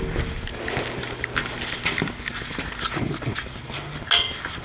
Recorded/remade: recorded